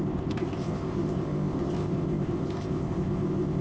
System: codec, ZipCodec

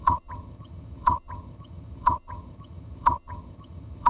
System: vocoder, HiFi-GAN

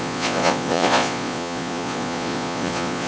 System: vocoder, Vocos